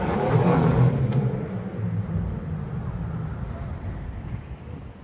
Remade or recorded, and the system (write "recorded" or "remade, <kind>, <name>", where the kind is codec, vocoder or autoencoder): recorded